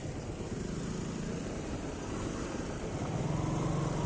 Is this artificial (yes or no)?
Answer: no